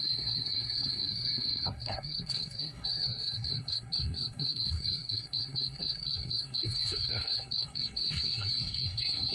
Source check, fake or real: fake